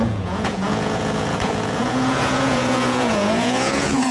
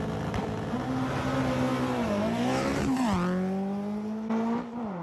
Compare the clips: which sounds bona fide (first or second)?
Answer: second